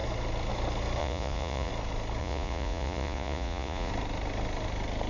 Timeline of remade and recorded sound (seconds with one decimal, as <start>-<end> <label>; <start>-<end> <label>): 0.0-1.0 recorded; 1.0-1.7 remade; 1.7-2.2 recorded; 2.2-3.9 remade; 3.9-5.1 recorded